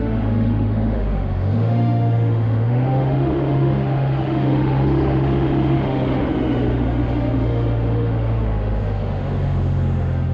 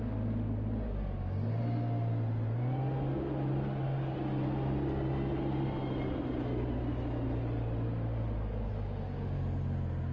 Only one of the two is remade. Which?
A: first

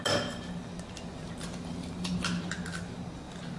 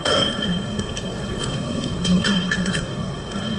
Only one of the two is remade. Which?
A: second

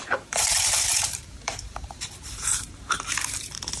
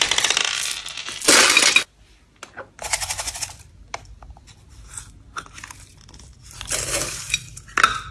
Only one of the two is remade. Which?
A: first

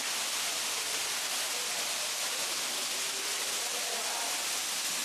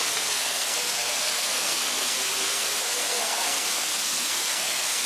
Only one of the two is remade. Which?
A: second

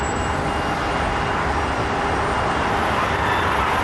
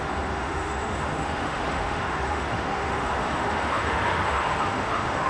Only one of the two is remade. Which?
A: second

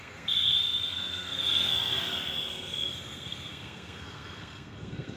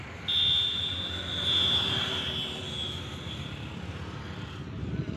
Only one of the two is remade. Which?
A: first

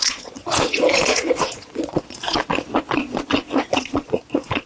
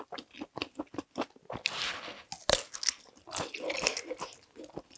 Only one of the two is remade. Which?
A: first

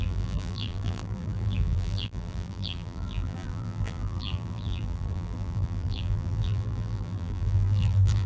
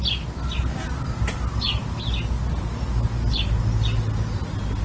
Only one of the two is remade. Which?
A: first